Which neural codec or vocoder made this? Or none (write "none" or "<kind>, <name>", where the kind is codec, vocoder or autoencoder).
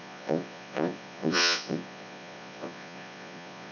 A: vocoder, Vocos